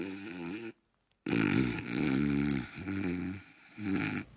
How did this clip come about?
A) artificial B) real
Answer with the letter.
B